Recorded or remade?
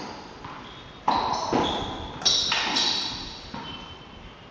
recorded